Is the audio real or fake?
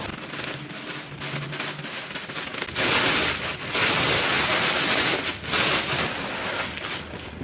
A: real